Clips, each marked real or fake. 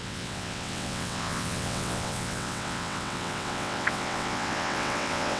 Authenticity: fake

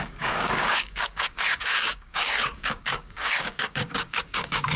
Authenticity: fake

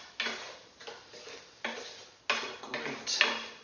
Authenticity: real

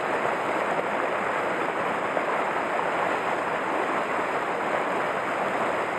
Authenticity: real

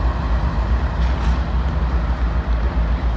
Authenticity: real